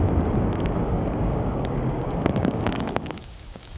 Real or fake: fake